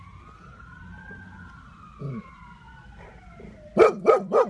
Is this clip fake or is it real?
real